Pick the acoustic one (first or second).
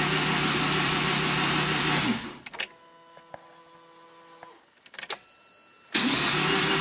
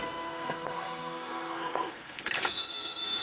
first